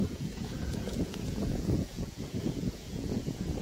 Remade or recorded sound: remade